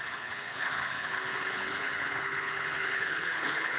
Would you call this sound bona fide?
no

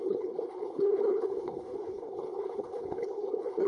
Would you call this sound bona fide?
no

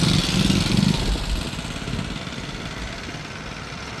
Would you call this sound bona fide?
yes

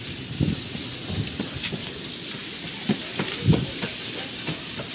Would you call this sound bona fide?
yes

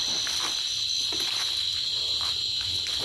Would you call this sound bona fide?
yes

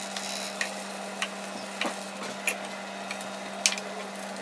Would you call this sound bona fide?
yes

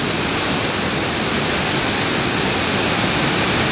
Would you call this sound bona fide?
yes